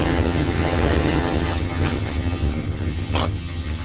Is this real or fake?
fake